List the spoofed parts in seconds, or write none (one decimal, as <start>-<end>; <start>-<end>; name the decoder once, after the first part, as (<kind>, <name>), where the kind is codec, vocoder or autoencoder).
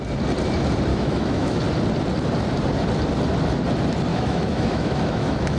0.9-1.6 (autoencoder, DAC-VAE); 4.1-5.6